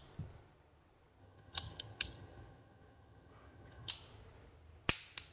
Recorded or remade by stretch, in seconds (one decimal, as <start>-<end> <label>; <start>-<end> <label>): 0.0-1.2 recorded; 1.2-3.9 remade; 3.9-5.3 recorded